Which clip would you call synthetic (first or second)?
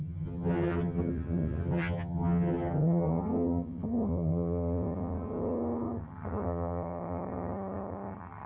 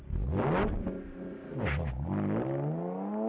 first